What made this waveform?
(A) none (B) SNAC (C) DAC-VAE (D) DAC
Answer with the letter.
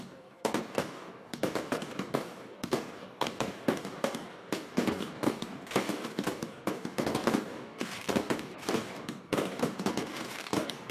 D